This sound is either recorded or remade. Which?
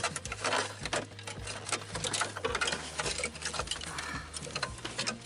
recorded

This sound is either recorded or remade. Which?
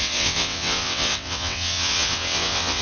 remade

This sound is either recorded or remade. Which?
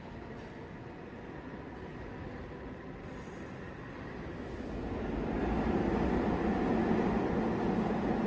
recorded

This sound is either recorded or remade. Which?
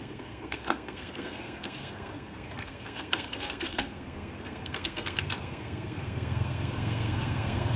remade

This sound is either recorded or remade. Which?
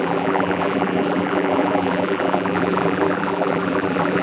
remade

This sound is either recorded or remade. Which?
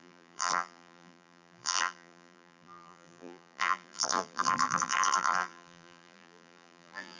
remade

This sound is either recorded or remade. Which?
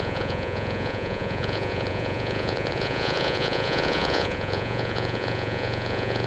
remade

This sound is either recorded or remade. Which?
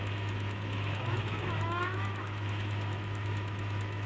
remade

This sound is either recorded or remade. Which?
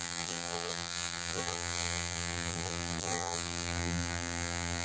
remade